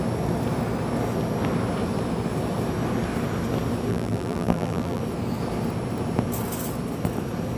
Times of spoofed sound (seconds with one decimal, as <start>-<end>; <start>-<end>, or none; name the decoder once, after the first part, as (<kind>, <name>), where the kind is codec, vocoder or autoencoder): 3.9-5.0 (vocoder, BigVGAN v2)